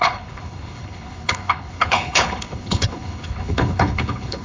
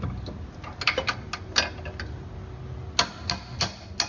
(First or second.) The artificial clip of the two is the first